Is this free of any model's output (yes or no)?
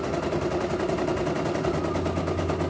yes